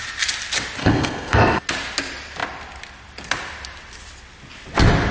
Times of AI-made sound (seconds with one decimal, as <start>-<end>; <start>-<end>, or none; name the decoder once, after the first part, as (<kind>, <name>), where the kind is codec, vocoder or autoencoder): 0.8-1.6 (codec, SNAC)